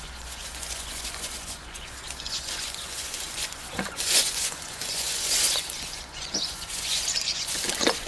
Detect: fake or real fake